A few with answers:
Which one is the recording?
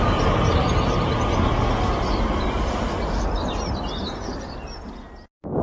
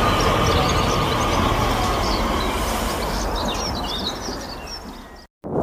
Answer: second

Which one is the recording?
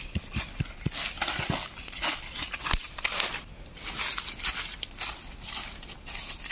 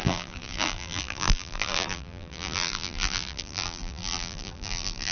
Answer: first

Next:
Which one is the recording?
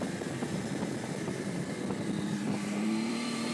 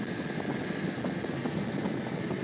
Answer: second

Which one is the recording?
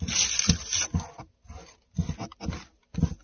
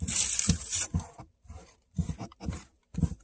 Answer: first